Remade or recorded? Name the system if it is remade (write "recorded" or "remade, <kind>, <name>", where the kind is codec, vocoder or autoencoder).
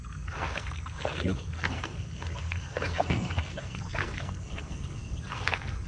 remade, codec, SNAC